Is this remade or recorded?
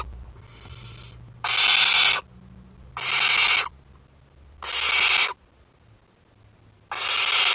recorded